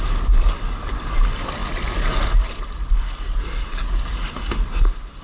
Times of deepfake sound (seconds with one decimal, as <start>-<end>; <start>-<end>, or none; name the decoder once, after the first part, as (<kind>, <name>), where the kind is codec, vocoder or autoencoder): none